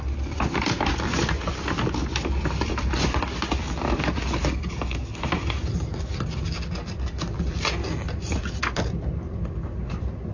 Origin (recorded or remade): recorded